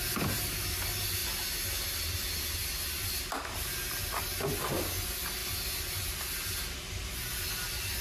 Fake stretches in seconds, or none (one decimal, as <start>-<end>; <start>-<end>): none